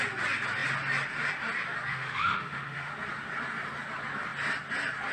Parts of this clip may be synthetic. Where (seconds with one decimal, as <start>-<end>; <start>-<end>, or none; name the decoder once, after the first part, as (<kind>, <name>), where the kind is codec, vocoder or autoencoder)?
1.9-2.9 (autoencoder, DAC-VAE)